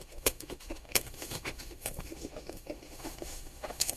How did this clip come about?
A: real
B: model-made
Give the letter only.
B